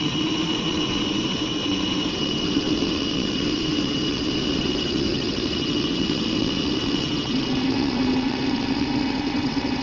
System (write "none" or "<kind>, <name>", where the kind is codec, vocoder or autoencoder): vocoder, WaveNeXt